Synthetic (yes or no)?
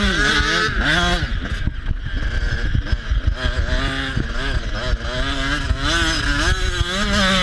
no